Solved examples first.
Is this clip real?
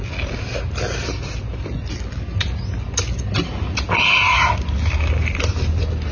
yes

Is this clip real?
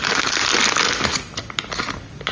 yes